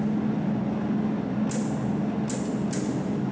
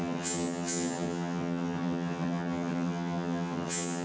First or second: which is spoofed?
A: second